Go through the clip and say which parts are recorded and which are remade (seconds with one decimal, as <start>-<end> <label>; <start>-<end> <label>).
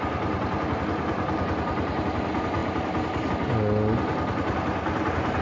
0.0-5.4 recorded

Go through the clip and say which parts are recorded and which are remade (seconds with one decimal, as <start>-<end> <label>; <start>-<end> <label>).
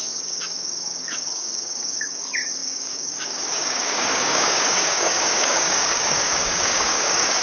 0.0-7.4 remade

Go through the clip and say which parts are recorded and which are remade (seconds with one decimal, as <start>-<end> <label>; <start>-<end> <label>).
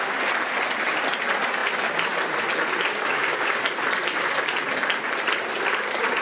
0.0-2.9 recorded; 2.9-3.6 remade; 3.6-6.2 recorded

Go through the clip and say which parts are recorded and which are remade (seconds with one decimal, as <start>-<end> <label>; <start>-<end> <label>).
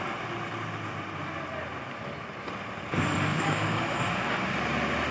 0.0-3.3 recorded; 3.3-3.8 remade; 3.8-5.1 recorded